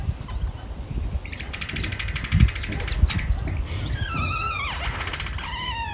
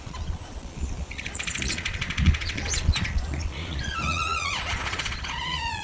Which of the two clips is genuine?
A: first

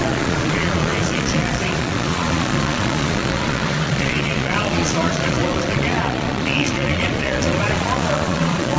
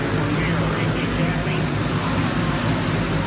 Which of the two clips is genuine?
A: second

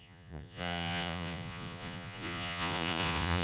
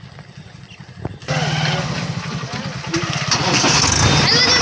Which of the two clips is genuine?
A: second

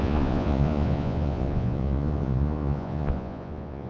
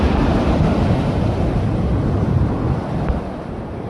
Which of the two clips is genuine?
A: second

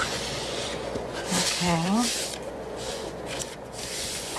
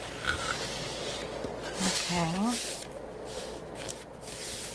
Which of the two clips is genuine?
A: second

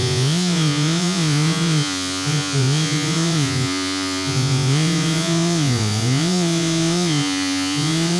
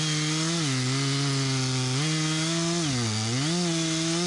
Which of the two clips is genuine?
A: second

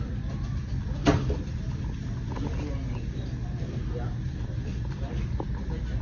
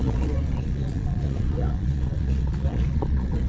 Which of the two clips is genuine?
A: first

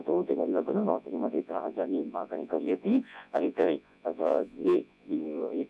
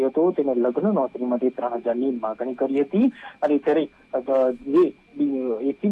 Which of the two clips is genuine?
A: second